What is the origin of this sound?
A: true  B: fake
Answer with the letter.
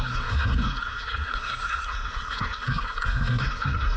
B